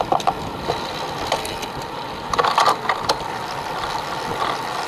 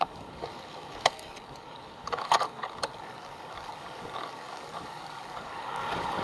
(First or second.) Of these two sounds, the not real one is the second